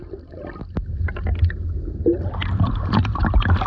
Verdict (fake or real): real